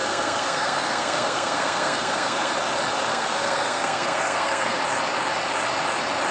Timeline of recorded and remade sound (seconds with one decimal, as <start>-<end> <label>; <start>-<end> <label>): 0.0-2.5 remade; 2.5-3.1 recorded; 3.1-4.8 remade; 4.8-6.3 recorded